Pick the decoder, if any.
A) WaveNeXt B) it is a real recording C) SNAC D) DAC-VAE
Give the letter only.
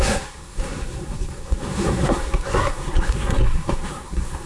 C